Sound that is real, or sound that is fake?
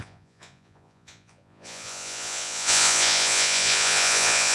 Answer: fake